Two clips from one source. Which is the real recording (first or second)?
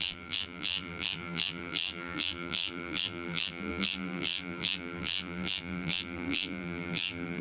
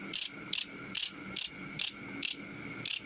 second